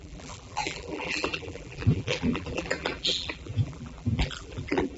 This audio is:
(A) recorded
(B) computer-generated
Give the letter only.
B